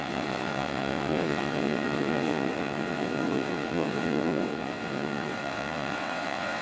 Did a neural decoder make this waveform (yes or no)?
yes